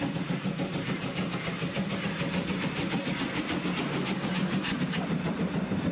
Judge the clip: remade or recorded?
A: recorded